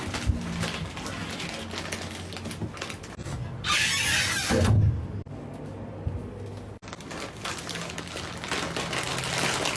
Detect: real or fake real